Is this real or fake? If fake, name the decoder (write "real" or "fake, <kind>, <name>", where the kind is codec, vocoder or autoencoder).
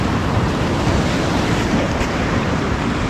fake, vocoder, BigVGAN v2